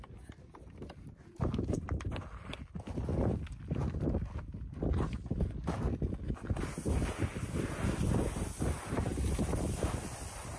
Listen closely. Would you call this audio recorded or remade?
recorded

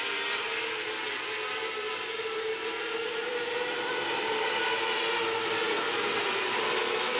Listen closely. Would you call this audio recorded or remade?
recorded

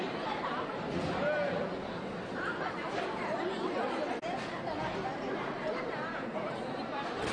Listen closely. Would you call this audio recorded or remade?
remade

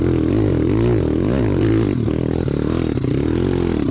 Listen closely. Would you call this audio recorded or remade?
recorded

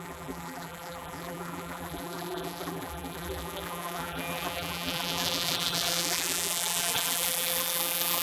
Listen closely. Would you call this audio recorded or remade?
remade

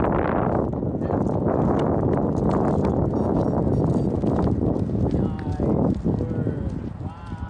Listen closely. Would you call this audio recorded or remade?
recorded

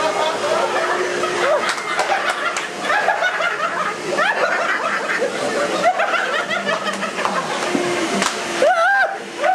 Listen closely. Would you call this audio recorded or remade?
recorded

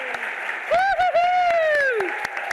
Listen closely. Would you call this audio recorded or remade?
remade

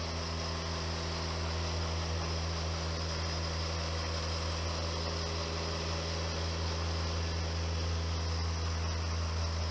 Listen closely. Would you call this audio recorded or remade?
recorded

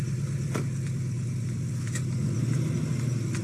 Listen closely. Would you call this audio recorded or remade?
recorded